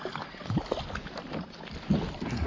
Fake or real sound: real